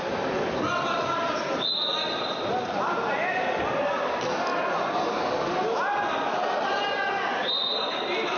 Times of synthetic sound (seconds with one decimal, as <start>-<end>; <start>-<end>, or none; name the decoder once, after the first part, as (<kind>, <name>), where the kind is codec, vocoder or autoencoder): none